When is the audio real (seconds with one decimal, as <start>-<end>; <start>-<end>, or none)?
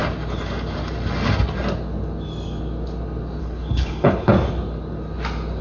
0.0-3.4; 4.3-5.6